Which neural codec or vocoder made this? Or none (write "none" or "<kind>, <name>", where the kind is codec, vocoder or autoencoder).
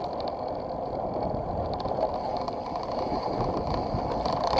none